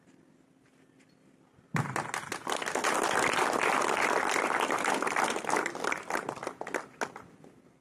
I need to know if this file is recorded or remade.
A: recorded